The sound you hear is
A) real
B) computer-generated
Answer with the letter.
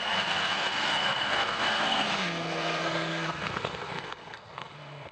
B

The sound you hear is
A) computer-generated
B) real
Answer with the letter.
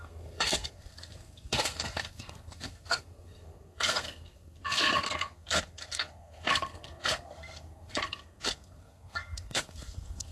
A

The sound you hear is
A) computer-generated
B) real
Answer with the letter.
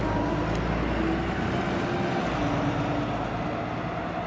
B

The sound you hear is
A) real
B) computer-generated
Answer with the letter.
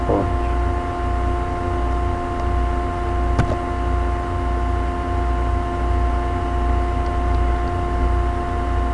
A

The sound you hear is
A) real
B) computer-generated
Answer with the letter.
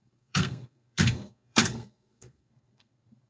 B